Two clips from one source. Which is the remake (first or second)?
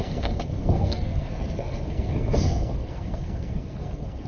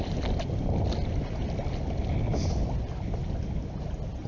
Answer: first